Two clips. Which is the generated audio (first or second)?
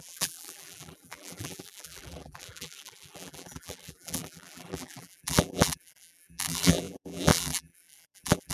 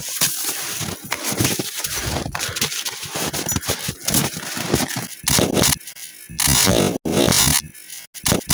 first